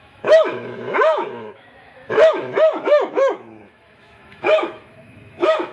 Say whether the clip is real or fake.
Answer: fake